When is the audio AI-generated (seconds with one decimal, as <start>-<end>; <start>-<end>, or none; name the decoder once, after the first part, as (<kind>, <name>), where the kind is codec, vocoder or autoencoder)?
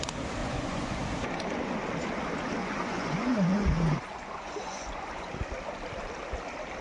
0.4-1.0 (vocoder, Vocos); 2.6-5.3